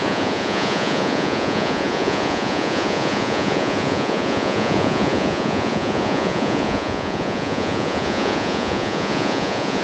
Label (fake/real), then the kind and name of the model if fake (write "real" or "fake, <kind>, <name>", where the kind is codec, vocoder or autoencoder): fake, vocoder, Vocos